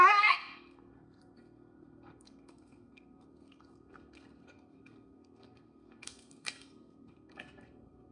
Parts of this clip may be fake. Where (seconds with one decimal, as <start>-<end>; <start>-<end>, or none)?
0.0-8.1